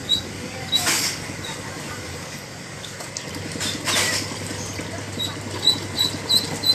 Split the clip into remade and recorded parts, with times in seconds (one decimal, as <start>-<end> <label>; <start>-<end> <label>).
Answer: 0.0-3.1 remade; 3.1-6.7 recorded